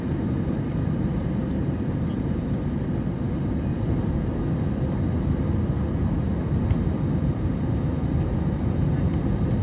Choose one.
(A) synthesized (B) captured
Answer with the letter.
B